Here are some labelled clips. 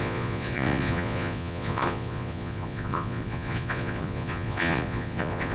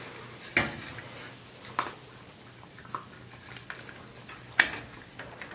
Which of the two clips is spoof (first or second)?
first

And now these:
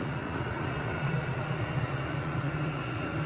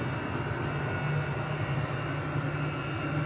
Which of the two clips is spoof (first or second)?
first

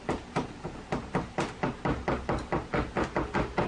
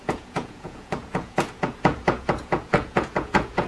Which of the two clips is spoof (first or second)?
second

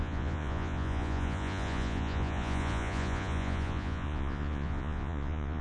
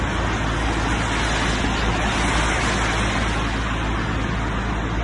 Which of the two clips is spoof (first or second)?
first